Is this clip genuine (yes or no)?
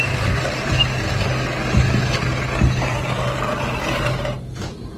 yes